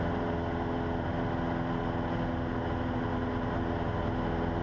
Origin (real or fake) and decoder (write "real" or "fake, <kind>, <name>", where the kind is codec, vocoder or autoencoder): real